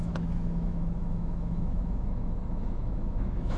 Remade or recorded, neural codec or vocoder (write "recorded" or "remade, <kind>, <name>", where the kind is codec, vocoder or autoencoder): remade, autoencoder, DAC-VAE